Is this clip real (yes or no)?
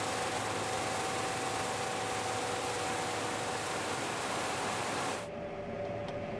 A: yes